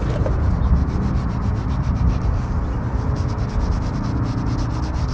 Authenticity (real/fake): real